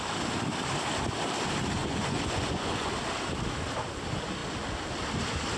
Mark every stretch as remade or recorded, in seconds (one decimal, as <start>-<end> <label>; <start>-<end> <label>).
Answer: 0.0-1.8 recorded; 1.8-2.9 remade; 2.9-5.6 recorded